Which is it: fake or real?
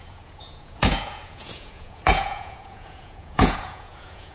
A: fake